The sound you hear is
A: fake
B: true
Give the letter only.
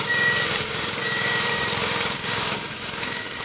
A